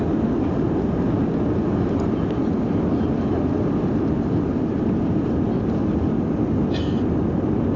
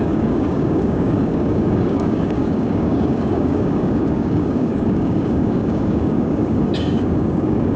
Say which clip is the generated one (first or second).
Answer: second